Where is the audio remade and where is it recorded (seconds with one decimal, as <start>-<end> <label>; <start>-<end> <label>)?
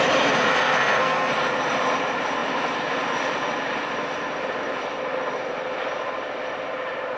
0.0-0.5 recorded; 0.5-1.3 remade; 1.3-7.2 recorded